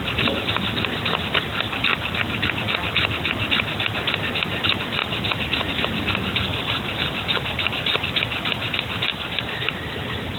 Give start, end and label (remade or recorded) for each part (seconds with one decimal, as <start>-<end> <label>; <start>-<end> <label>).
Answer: 0.0-6.5 recorded; 6.5-7.7 remade; 7.7-9.1 recorded; 9.1-10.4 remade